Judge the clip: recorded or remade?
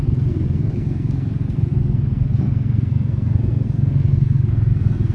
remade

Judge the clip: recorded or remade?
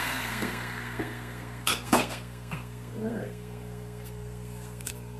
remade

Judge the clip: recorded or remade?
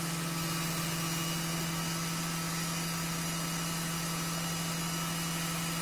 recorded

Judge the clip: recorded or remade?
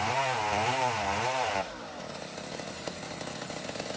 recorded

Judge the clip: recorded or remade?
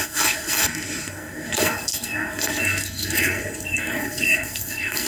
remade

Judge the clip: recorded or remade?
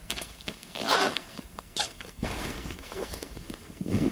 remade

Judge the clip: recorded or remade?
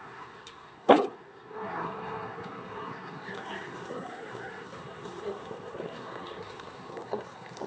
remade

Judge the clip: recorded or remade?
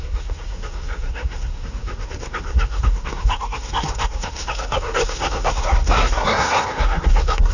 remade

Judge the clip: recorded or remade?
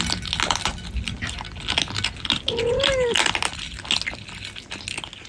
recorded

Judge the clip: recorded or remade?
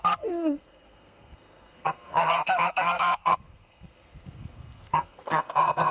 remade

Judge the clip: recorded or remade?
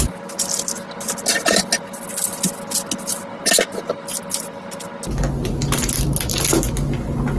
recorded